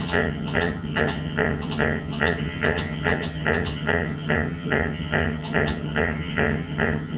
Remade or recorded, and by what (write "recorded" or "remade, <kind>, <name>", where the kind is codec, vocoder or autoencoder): remade, vocoder, HiFi-GAN